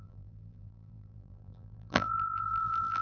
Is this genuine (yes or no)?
no